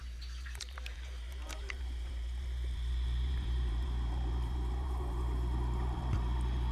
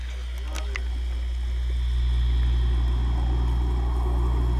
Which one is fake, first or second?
first